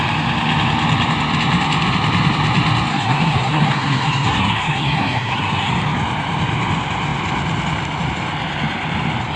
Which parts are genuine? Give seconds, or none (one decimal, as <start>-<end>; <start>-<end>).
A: 0.0-2.9; 5.7-9.4